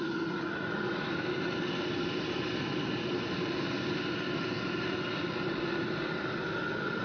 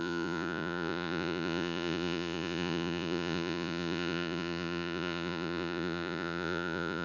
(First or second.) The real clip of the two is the first